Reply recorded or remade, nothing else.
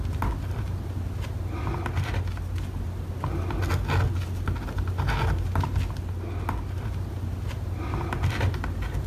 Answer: recorded